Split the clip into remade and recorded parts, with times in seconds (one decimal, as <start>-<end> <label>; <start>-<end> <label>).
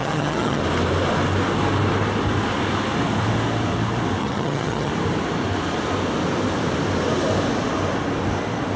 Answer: 0.0-0.6 remade; 0.6-4.2 recorded; 4.2-4.9 remade; 4.9-8.8 recorded